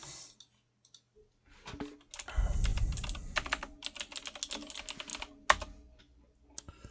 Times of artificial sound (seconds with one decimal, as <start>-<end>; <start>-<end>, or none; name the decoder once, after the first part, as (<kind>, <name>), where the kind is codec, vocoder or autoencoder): none